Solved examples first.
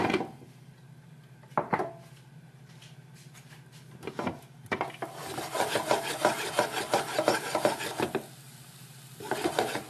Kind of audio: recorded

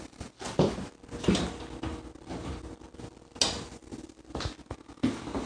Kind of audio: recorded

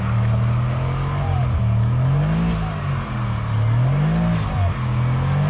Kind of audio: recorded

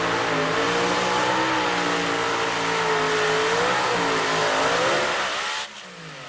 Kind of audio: recorded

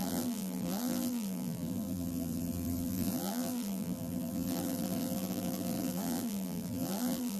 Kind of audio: remade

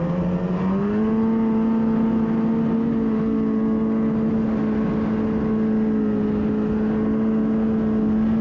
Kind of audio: recorded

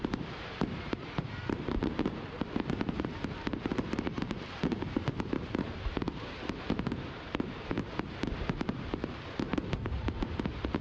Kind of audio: remade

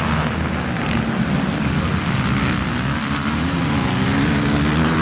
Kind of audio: recorded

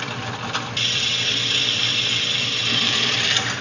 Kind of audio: remade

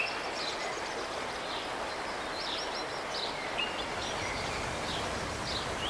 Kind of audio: recorded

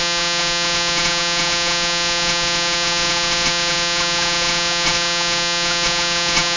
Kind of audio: remade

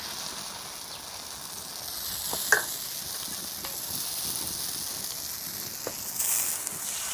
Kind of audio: recorded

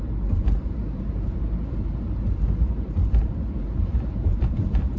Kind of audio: remade